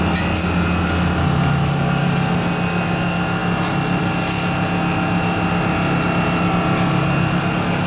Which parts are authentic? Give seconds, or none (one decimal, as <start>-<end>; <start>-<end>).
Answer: 0.0-7.9